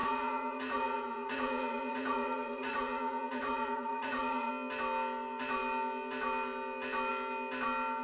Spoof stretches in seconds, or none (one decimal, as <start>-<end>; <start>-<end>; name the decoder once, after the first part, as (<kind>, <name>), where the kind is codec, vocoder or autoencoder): 0.0-4.5 (vocoder, Vocos)